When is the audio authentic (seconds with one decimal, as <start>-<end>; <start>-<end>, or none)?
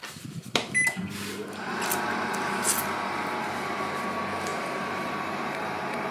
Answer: 0.0-3.4